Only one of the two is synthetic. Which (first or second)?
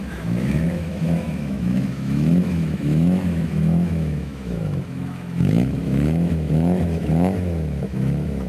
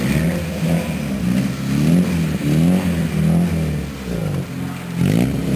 first